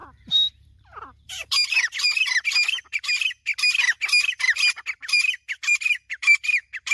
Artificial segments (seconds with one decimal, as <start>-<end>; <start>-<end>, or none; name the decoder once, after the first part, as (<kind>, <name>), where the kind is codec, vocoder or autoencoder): 0.0-3.5 (vocoder, BigVGAN v2); 4.3-6.9